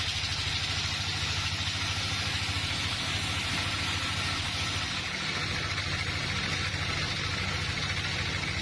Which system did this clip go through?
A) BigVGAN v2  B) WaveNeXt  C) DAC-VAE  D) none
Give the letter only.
D